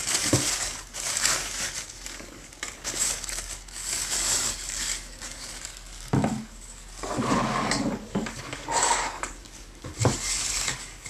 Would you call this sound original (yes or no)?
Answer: no